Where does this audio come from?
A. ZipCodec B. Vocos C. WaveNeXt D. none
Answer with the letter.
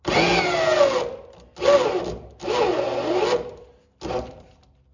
D